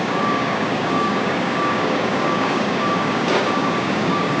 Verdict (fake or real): fake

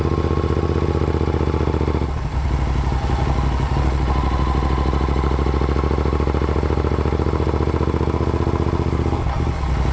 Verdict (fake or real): real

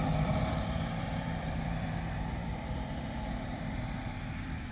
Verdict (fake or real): fake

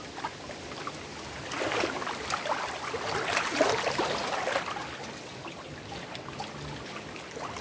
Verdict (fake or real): real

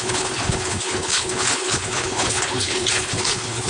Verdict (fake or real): fake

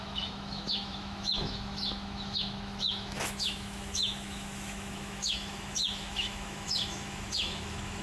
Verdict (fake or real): fake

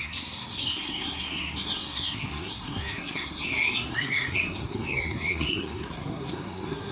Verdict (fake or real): fake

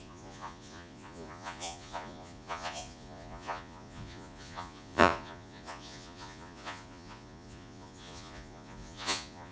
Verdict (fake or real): fake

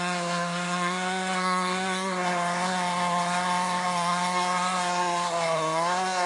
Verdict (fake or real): fake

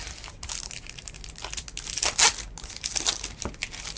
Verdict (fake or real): real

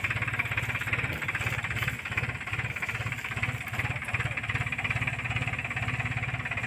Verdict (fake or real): real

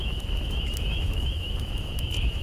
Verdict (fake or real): fake